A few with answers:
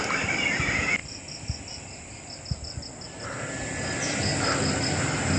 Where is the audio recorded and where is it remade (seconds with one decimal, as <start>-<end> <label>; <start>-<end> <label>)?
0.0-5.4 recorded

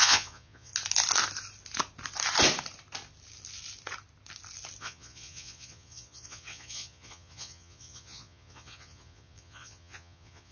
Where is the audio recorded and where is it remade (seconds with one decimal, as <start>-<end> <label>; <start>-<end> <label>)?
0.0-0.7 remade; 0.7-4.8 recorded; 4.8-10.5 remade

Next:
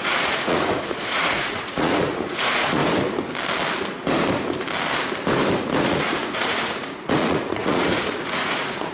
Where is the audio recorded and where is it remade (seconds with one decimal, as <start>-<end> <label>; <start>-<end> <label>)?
0.0-2.8 remade; 2.8-5.8 recorded; 5.8-8.9 remade

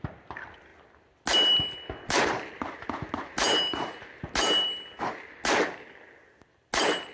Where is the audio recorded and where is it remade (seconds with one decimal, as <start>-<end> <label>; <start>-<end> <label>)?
0.0-7.1 recorded

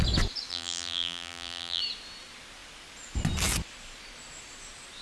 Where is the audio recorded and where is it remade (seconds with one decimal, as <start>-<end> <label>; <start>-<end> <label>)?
0.0-0.5 recorded; 0.5-1.8 remade; 1.8-5.0 recorded

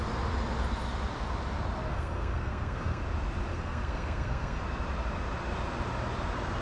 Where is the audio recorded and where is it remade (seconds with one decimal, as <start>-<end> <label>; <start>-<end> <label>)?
0.0-1.9 recorded; 1.9-3.0 remade; 3.0-3.5 recorded; 3.5-4.6 remade; 4.6-6.6 recorded

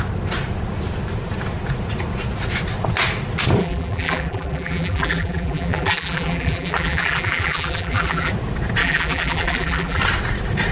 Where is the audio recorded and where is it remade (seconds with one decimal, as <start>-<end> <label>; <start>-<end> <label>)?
0.0-3.6 recorded; 3.6-8.3 remade; 8.3-8.8 recorded; 8.8-10.0 remade; 10.0-10.7 recorded